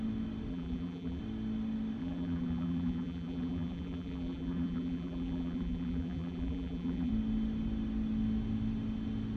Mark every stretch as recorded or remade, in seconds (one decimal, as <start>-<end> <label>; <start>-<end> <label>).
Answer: 0.0-0.5 recorded; 0.5-1.2 remade; 1.2-2.0 recorded; 2.0-7.1 remade; 7.1-9.4 recorded